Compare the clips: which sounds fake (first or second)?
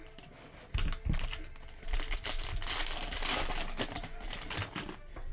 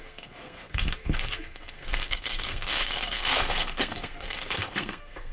second